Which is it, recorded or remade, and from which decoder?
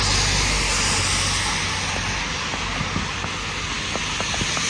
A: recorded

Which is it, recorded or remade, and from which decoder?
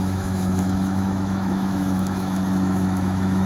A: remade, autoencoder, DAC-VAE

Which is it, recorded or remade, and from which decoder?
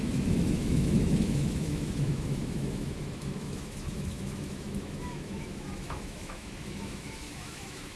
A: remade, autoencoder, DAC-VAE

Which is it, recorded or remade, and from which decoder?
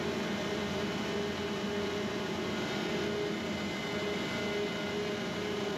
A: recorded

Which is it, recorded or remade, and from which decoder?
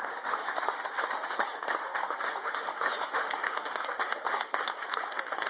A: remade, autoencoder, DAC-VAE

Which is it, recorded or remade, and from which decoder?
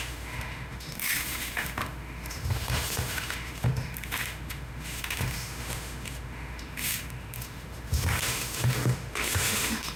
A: remade, autoencoder, DAC-VAE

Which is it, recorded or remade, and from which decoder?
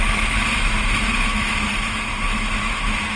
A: remade, autoencoder, DAC-VAE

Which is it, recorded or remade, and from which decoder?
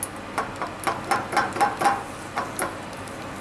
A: recorded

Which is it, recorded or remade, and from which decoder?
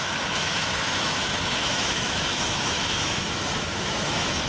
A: remade, autoencoder, DAC-VAE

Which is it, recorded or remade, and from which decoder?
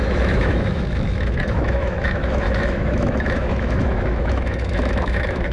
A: remade, autoencoder, DAC-VAE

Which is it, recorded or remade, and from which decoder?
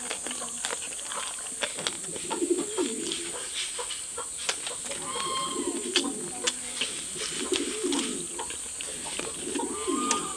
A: recorded